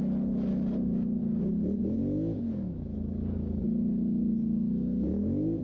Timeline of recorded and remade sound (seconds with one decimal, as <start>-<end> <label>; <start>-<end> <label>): 0.0-0.5 recorded; 0.5-1.2 remade; 1.2-1.8 recorded; 1.8-5.6 remade